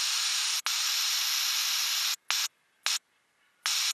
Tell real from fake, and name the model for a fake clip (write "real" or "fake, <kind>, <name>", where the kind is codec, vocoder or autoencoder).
real